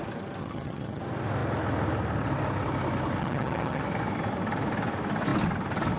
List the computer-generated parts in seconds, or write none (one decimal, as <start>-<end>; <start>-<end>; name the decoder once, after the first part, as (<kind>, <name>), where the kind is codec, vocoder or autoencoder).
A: 0.4-1.0 (vocoder, HiFi-GAN); 3.2-3.8